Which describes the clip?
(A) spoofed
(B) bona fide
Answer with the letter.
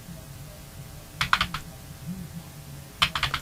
B